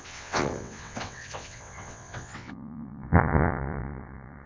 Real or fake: fake